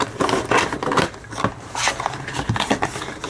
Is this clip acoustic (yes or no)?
no